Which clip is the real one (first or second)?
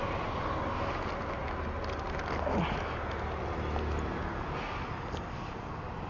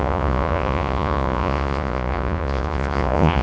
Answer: first